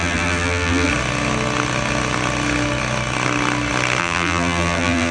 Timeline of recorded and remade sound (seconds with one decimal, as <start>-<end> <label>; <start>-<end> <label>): 0.0-0.9 remade; 0.9-4.0 recorded; 4.0-5.1 remade